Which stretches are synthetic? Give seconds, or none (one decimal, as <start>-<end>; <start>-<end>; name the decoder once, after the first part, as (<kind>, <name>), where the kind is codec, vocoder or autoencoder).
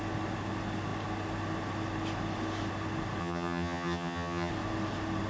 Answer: 3.2-4.5 (vocoder, HiFi-GAN)